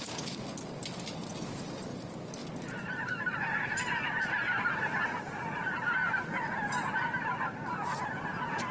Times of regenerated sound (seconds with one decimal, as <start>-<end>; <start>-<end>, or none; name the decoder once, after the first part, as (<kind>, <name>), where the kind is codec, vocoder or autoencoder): none